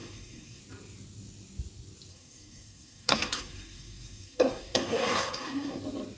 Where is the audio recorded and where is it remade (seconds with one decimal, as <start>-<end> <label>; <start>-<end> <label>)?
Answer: 0.0-0.6 remade; 0.6-2.1 recorded; 2.1-5.8 remade; 5.8-6.2 recorded